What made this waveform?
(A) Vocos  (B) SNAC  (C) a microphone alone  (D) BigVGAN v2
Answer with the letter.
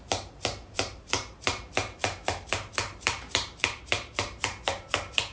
D